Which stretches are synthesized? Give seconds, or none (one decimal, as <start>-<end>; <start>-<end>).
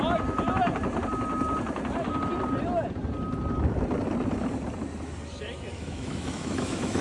5.7-7.0